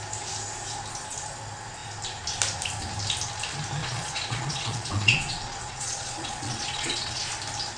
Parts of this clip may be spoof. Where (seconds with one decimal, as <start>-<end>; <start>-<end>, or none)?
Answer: 3.8-7.2